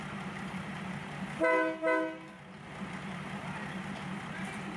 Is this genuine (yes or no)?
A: yes